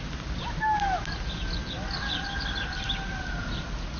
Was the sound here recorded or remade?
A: recorded